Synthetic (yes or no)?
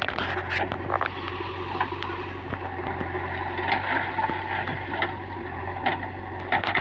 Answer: no